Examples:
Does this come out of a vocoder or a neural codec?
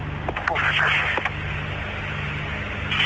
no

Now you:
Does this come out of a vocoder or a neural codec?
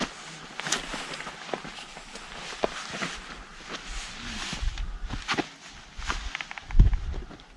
no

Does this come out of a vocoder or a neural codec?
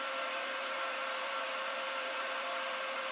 yes